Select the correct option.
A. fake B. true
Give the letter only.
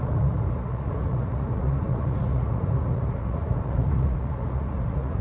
A